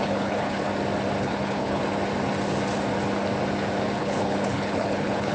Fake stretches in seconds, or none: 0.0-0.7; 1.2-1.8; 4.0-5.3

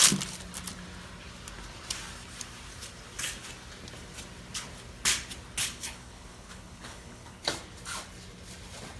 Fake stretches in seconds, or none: 5.6-7.5